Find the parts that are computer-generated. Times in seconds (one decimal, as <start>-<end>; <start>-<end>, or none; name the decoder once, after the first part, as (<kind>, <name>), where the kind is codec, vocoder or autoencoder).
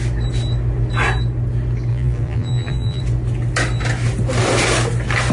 1.9-3.0 (vocoder, BigVGAN v2)